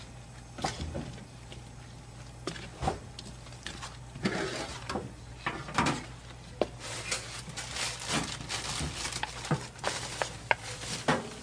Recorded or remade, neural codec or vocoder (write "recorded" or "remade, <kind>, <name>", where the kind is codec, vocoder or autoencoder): recorded